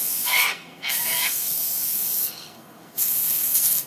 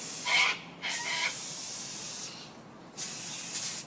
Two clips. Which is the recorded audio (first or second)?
second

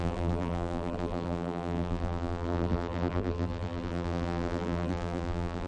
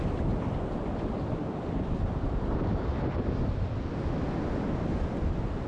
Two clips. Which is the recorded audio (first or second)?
second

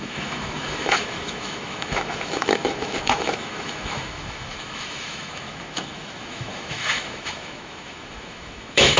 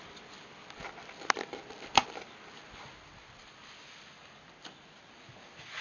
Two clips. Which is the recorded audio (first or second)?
second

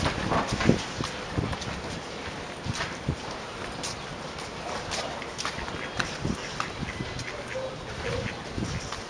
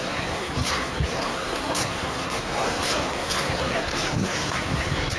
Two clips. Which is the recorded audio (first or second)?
first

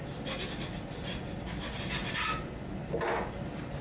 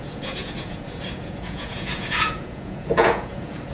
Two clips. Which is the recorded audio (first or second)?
first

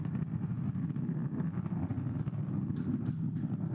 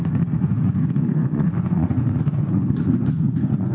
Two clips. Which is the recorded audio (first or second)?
first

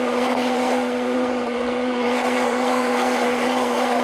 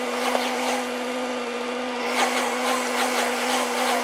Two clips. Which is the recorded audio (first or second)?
second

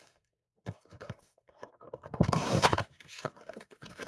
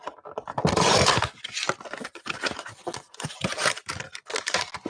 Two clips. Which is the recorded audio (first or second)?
second